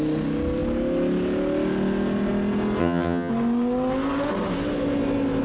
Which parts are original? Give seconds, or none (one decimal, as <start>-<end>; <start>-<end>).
0.0-2.8; 3.3-5.4